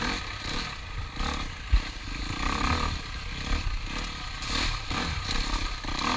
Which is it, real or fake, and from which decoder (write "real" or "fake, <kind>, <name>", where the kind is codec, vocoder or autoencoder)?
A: real